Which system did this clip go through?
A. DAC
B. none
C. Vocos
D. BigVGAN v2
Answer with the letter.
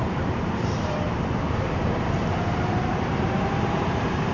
D